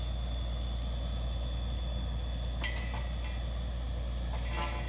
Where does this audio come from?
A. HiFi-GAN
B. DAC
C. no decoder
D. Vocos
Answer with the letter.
C